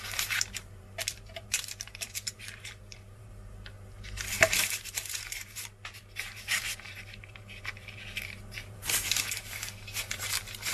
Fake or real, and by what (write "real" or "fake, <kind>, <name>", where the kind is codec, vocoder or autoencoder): fake, vocoder, BigVGAN v2